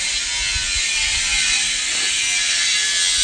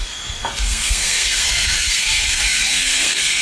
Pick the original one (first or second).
first